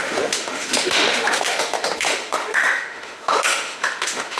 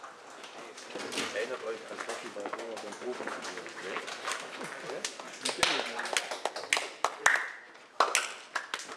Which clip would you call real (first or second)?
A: second